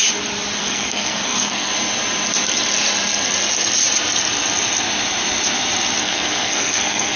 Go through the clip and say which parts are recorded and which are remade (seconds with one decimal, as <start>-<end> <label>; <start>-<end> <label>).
0.0-0.6 recorded; 0.6-1.7 remade; 1.7-6.0 recorded; 6.0-7.2 remade